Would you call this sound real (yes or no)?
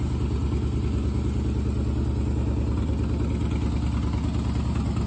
yes